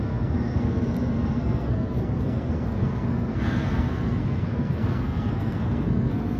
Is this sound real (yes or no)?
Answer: no